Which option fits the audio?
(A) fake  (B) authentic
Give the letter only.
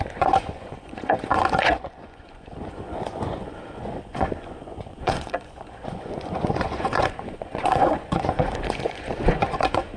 A